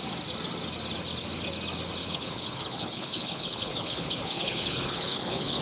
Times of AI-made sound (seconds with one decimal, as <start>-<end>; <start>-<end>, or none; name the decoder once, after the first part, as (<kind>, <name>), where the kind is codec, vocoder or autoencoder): 2.0-5.6 (codec, HILCodec)